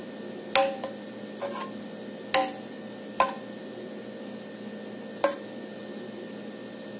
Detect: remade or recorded recorded